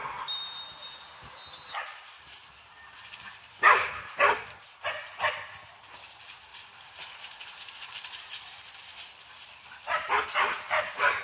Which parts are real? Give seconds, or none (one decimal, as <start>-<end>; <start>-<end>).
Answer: 4.9-6.5; 10.2-11.2

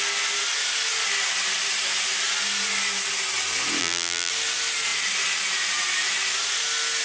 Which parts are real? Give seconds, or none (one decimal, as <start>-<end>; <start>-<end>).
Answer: 0.0-3.8; 4.3-7.0